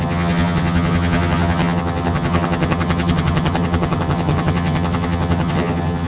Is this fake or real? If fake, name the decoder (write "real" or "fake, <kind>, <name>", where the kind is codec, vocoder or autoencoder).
fake, vocoder, HiFi-GAN